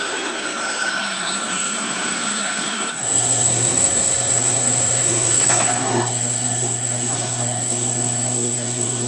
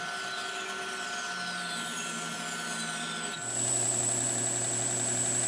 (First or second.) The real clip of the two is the second